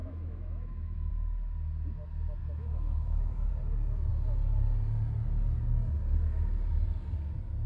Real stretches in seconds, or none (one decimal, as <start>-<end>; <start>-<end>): 1.1-2.4; 3.5-7.7

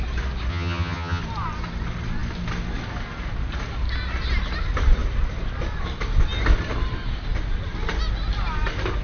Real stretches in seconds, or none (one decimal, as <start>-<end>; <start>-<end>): 0.0-0.5; 1.2-9.0

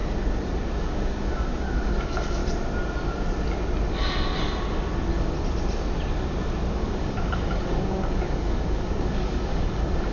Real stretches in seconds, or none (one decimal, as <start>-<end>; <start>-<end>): 0.0-0.8; 2.4-6.7

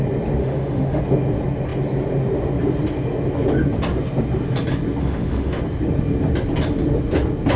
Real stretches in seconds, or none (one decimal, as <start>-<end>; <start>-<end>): 0.0-0.4; 1.0-5.0; 5.6-7.6